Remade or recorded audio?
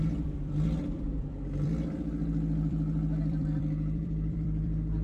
remade